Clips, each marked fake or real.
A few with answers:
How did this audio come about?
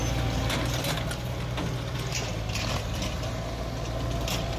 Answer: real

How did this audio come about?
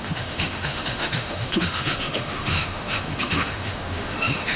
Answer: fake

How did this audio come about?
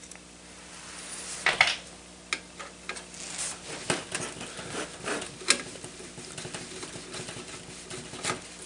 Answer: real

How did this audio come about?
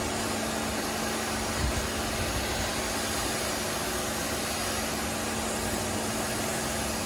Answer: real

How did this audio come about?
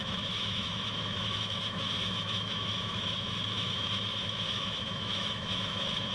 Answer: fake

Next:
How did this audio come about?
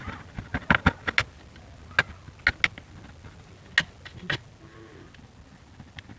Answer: real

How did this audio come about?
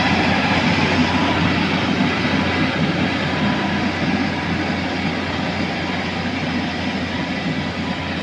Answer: real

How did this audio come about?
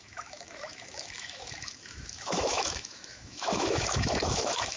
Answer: fake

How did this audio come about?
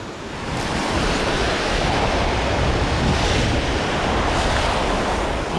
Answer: real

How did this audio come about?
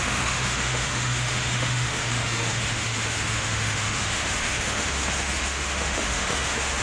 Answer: fake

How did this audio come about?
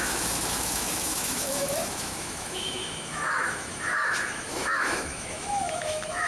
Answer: fake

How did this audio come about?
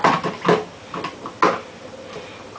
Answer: real